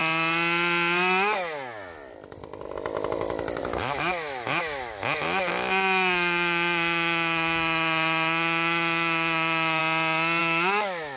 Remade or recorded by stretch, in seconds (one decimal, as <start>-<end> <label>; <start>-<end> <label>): 0.0-3.6 recorded; 3.6-9.8 remade; 9.8-10.4 recorded; 10.4-11.2 remade